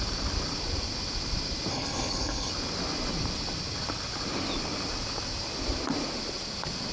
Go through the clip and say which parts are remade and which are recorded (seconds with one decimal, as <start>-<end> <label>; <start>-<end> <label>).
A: 0.0-1.7 recorded; 1.7-2.5 remade; 2.5-6.9 recorded